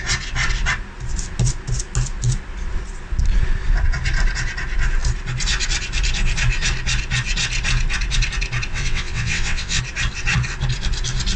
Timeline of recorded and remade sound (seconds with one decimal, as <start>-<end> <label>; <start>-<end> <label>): 0.0-8.7 recorded; 8.7-9.8 remade; 9.8-11.4 recorded